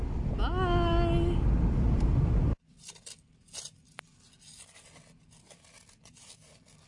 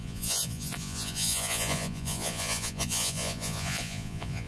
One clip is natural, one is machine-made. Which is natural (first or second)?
first